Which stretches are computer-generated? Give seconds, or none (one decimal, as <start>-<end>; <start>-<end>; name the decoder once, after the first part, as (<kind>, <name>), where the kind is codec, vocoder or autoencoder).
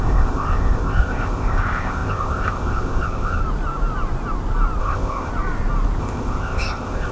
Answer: 0.0-3.4 (codec, ZipCodec); 4.8-5.3; 6.0-7.1